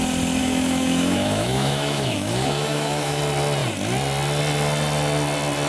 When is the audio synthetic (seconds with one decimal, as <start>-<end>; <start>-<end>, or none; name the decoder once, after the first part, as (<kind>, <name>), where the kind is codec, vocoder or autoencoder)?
0.4-3.2 (autoencoder, DAC-VAE)